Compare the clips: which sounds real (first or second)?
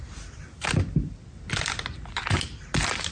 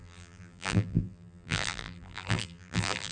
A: first